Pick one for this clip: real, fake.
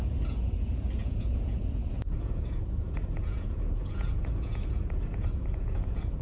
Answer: fake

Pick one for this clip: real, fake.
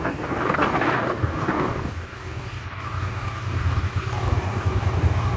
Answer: fake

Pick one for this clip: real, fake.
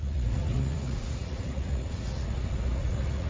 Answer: fake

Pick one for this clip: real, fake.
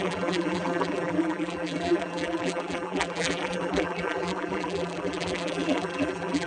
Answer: fake